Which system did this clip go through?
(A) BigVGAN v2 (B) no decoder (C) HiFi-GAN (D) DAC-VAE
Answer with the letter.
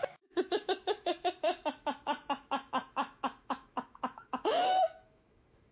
D